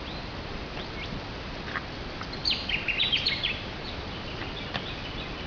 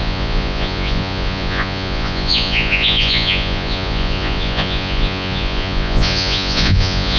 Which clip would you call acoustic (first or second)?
first